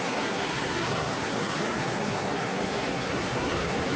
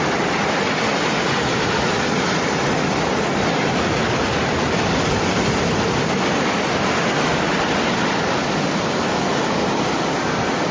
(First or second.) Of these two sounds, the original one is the second